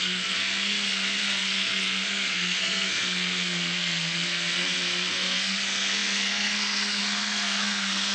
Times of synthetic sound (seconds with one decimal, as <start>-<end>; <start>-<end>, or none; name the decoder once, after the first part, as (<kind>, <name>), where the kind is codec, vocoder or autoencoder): 0.0-8.1 (codec, SNAC)